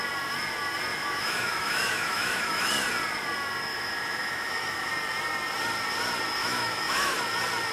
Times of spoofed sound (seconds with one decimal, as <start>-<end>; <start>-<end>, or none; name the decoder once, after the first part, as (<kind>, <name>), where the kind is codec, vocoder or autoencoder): 0.9-2.7 (autoencoder, DAC-VAE); 3.7-4.9; 6.4-7.2